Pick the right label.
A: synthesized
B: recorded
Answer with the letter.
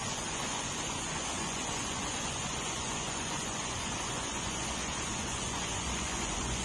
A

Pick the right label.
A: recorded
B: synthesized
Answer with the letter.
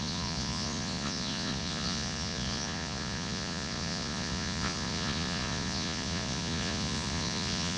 B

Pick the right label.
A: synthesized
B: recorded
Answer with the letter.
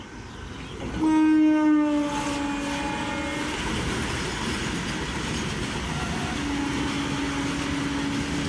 B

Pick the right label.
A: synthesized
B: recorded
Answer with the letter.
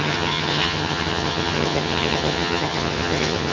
A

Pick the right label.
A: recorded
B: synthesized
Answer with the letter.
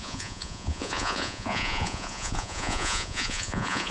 B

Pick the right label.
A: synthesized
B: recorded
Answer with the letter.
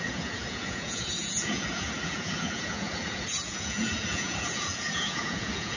A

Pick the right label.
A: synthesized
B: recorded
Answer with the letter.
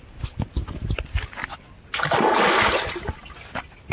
B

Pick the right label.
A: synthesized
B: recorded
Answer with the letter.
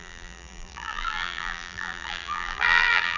A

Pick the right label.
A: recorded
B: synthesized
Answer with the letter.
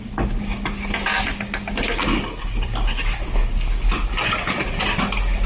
A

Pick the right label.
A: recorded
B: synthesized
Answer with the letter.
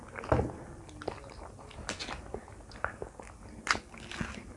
A